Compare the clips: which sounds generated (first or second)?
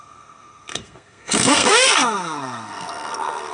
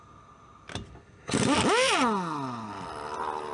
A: first